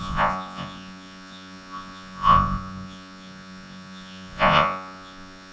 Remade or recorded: remade